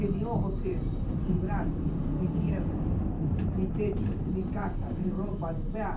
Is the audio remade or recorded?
remade